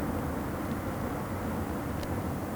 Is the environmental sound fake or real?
real